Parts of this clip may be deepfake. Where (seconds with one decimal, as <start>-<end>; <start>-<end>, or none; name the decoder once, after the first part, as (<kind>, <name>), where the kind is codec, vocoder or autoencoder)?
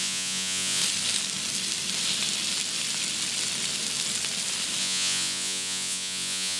0.0-0.8 (vocoder, Vocos); 4.8-6.6